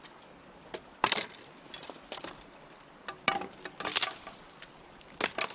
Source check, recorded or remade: recorded